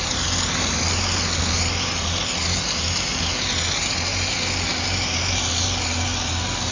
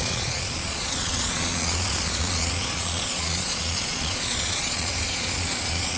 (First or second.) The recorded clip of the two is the first